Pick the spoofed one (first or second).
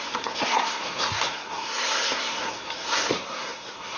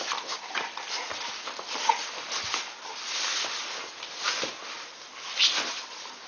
first